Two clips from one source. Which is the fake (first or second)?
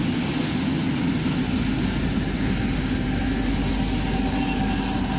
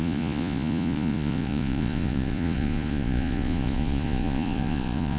second